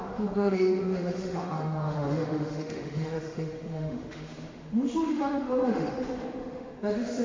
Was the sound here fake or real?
fake